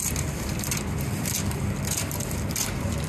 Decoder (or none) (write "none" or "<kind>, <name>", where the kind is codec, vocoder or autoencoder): vocoder, BigVGAN v2